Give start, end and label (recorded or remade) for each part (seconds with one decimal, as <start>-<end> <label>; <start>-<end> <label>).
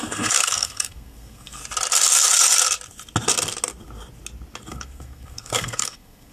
0.0-1.6 remade; 1.6-4.7 recorded; 4.7-6.3 remade